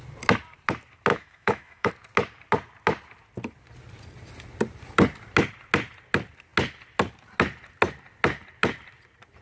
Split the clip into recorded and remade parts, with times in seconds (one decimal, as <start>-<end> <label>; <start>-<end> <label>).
0.0-1.1 recorded; 1.1-1.9 remade; 1.9-9.4 recorded